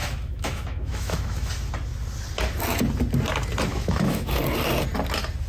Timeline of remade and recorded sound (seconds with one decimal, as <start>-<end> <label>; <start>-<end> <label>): 0.0-1.5 remade; 1.5-3.7 recorded; 3.7-4.4 remade; 4.4-5.5 recorded

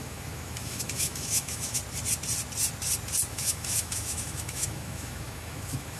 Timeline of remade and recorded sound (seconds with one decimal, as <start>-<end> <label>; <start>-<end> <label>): 0.0-1.8 remade; 1.8-3.3 recorded; 3.3-6.0 remade

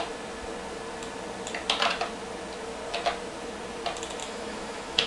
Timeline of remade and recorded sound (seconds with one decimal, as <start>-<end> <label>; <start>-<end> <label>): 0.0-4.2 recorded; 4.2-5.1 remade

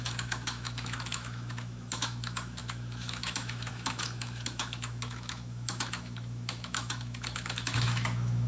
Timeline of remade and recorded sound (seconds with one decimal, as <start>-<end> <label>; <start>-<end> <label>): 0.0-8.5 remade

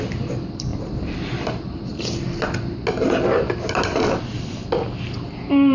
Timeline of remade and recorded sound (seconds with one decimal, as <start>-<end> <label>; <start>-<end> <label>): 0.0-5.7 recorded

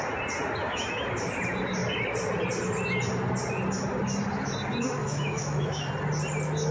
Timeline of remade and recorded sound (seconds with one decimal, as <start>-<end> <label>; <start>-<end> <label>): 0.0-0.6 recorded; 0.6-1.1 remade; 1.1-5.0 recorded; 5.0-5.9 remade; 5.9-6.7 recorded

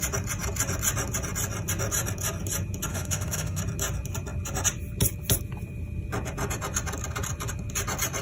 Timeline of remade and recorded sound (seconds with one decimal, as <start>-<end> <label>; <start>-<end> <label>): 0.0-2.9 recorded; 2.9-3.6 remade; 3.6-8.2 recorded

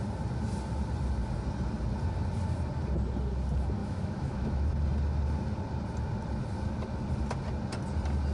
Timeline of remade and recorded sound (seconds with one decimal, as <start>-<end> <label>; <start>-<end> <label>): 0.0-3.8 recorded; 3.8-4.7 remade; 4.7-8.3 recorded